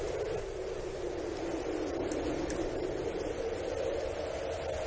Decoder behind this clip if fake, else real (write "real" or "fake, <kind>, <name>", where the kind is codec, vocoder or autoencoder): real